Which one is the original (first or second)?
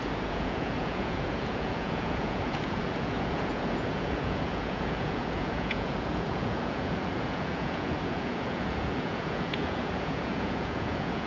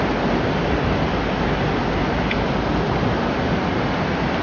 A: second